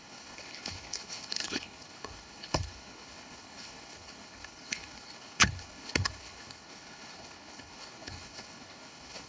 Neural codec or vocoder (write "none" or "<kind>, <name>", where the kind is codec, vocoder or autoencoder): codec, HILCodec